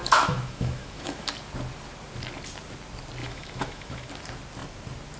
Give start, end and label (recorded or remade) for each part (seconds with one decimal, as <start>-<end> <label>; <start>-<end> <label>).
0.0-1.3 remade; 1.3-3.2 recorded; 3.2-4.1 remade; 4.1-5.2 recorded